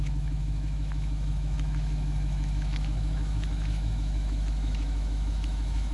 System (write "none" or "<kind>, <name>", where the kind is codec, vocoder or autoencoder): autoencoder, DAC-VAE